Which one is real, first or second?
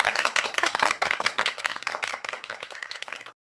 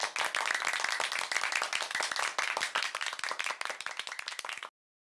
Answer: second